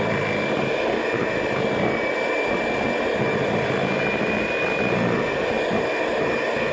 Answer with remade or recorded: recorded